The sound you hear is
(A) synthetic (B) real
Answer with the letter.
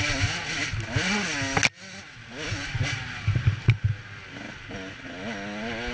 B